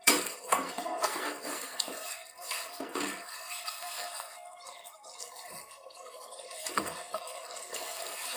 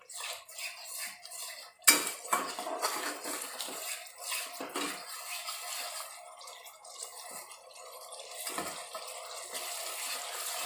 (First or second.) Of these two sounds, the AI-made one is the first